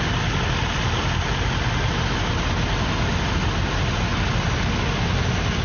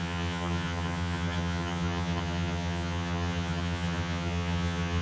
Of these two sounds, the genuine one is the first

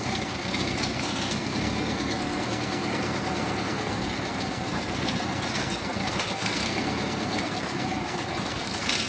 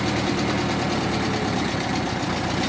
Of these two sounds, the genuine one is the second